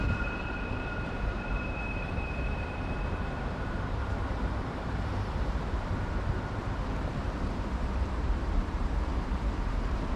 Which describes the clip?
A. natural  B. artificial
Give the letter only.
B